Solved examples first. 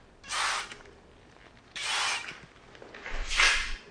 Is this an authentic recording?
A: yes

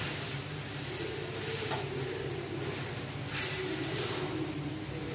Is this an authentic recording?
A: yes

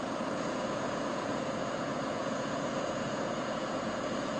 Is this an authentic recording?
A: no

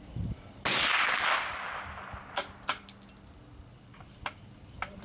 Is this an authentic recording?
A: yes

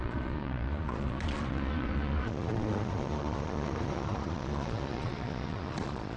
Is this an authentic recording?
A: no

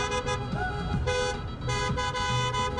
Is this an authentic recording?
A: yes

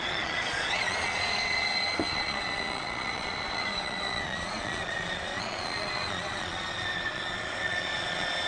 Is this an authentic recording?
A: no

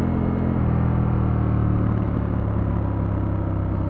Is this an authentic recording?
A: yes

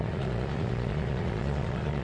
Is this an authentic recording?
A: no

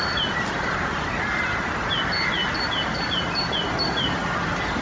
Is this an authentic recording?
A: yes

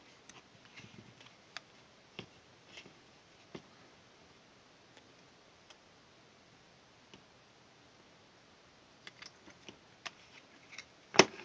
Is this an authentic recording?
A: yes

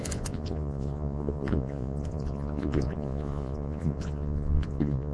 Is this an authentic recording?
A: no